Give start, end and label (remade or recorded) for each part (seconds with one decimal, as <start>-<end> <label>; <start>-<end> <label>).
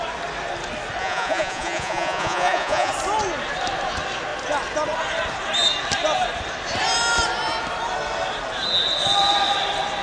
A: 0.0-1.0 recorded; 1.0-2.9 remade; 2.9-10.0 recorded